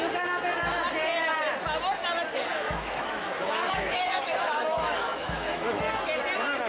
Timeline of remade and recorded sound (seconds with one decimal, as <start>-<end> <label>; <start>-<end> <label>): 0.0-2.5 recorded; 2.5-5.8 remade; 5.8-6.7 recorded